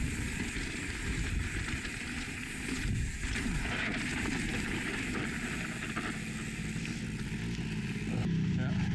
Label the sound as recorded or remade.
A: recorded